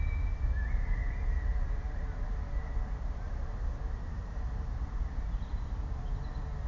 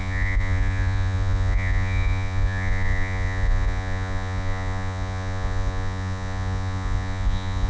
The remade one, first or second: second